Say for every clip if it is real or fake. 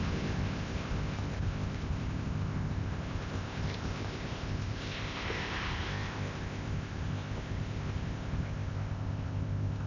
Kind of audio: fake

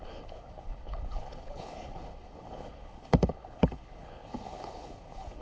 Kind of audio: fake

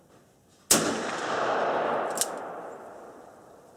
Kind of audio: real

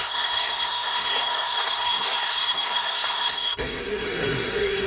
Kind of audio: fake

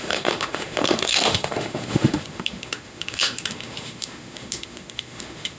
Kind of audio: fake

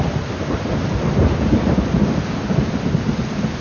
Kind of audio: real